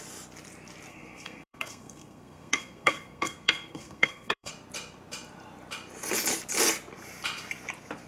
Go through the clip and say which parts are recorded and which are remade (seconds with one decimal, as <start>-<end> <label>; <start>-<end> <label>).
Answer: 0.0-0.9 recorded; 0.9-4.5 remade; 4.5-8.1 recorded